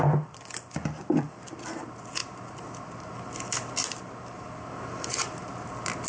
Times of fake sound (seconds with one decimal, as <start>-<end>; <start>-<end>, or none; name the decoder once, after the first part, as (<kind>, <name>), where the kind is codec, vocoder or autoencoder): 0.8-1.8 (vocoder, BigVGAN v2); 2.2-4.7